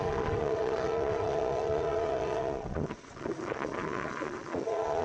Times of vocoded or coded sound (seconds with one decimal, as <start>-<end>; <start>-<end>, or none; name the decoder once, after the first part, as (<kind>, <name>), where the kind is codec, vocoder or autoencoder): 0.0-5.0 (vocoder, Vocos)